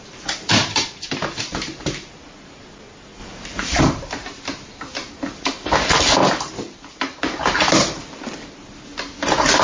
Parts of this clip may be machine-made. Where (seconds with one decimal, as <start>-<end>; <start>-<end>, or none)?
0.6-2.1; 3.2-3.8